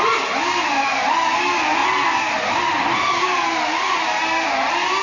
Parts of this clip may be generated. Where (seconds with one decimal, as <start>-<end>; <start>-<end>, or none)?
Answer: none